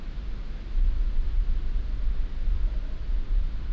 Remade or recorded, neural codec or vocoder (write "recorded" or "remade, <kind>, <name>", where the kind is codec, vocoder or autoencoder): recorded